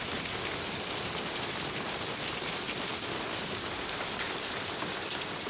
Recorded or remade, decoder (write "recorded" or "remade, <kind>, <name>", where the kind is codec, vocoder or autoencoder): recorded